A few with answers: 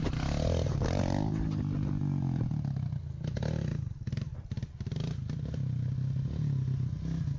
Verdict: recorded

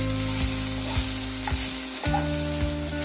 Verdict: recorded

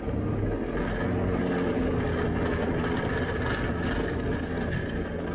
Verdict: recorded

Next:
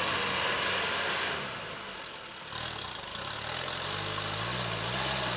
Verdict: recorded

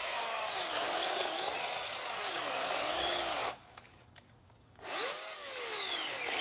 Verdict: remade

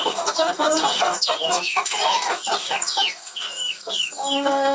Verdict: remade